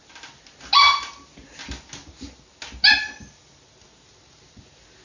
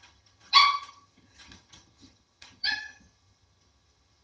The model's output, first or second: second